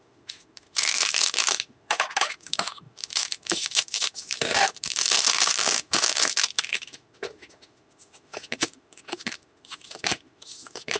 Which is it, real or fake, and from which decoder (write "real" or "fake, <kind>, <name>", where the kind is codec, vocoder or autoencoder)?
fake, autoencoder, DAC-VAE